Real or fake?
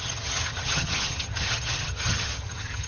fake